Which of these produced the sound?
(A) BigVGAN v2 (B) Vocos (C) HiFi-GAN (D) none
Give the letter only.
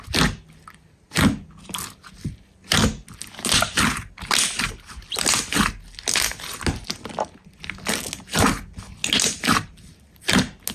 D